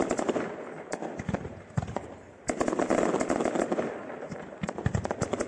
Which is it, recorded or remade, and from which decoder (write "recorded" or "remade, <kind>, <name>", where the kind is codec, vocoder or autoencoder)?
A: recorded